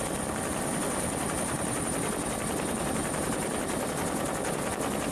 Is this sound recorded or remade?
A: remade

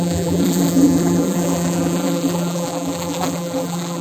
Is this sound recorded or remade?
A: remade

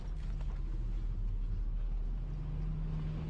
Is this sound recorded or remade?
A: recorded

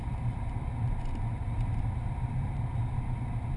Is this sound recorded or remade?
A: remade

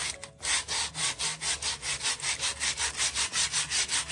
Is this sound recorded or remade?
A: recorded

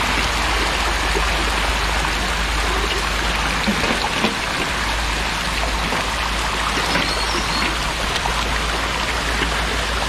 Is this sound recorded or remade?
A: recorded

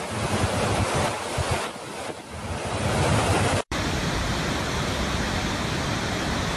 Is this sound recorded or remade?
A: remade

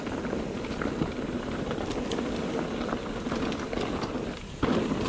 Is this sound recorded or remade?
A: recorded